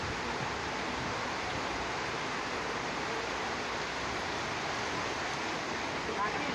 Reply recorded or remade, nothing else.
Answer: recorded